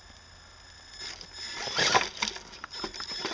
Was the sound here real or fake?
real